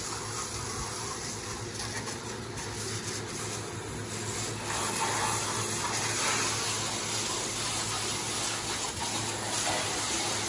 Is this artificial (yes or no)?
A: no